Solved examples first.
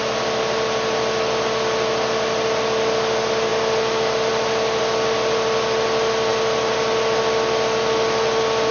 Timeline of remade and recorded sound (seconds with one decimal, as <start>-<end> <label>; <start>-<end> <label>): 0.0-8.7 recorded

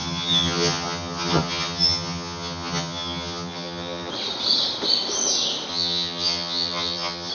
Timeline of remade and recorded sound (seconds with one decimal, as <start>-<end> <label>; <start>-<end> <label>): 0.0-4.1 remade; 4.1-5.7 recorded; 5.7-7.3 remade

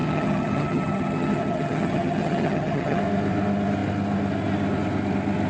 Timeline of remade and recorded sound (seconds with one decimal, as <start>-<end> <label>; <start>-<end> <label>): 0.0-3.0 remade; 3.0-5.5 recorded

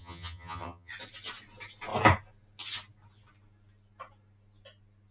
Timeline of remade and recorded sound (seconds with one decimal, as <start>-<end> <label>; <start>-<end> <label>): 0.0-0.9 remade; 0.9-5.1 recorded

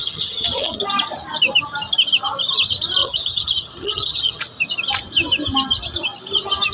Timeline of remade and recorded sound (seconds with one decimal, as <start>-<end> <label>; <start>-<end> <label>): 0.0-0.8 remade; 0.8-3.0 recorded; 3.0-4.4 remade; 4.4-6.7 recorded

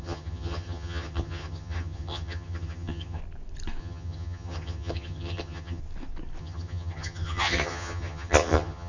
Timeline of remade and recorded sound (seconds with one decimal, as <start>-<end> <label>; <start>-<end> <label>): 0.0-3.2 remade; 3.2-3.8 recorded; 3.8-5.8 remade; 5.8-6.4 recorded; 6.4-8.9 remade

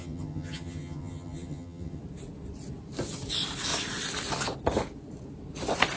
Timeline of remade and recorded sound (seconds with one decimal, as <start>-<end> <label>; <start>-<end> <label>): 0.0-2.0 remade; 2.0-6.0 recorded

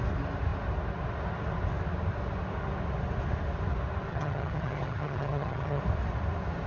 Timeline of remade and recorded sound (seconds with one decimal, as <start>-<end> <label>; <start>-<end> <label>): 0.0-4.1 recorded; 4.1-5.8 remade; 5.8-6.7 recorded